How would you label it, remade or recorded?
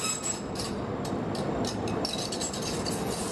recorded